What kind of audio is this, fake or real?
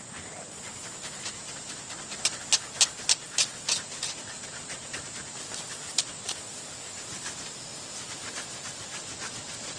real